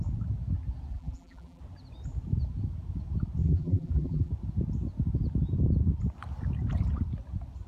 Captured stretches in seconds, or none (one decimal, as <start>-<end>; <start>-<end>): 0.0-0.9; 1.6-3.4; 4.3-7.7